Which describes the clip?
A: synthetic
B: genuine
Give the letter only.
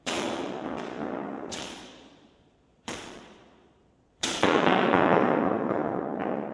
A